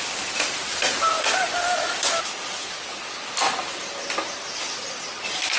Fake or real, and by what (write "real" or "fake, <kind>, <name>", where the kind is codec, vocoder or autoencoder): real